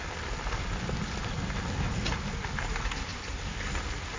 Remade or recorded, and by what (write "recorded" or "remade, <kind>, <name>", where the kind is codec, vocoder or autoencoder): recorded